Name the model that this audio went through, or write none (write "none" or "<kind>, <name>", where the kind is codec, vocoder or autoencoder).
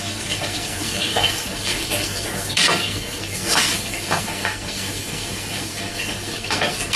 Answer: codec, SNAC